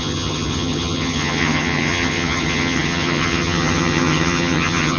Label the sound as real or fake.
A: fake